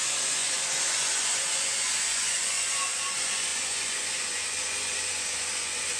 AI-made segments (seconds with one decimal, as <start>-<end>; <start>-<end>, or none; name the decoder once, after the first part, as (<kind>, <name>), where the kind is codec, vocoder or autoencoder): 0.0-6.0 (vocoder, Vocos)